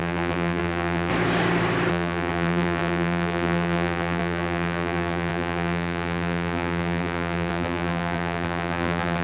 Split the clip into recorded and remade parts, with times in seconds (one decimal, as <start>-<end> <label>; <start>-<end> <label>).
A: 0.0-1.1 remade; 1.1-1.9 recorded; 1.9-9.2 remade